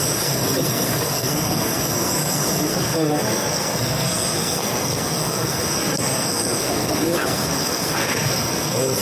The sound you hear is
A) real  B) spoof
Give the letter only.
B